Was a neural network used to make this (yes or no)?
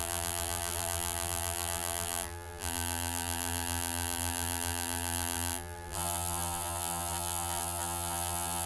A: yes